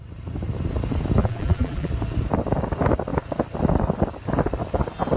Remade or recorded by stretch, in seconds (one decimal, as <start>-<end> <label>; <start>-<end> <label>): 0.0-1.2 recorded; 1.2-1.9 remade; 1.9-5.2 recorded